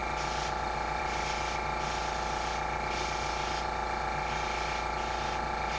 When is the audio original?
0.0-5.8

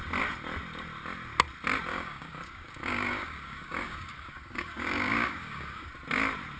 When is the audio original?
0.0-1.9; 5.9-6.6

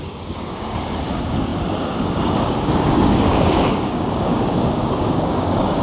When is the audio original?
none

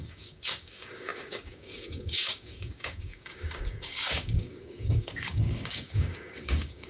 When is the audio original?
none

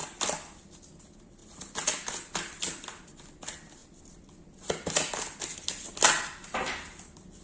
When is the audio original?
0.0-7.4

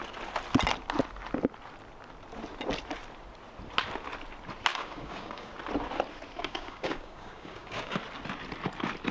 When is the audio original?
0.0-4.7; 5.5-6.4; 8.0-9.1